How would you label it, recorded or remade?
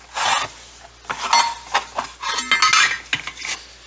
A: recorded